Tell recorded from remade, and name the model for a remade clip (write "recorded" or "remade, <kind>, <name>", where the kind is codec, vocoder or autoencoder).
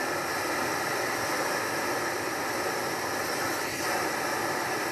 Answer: recorded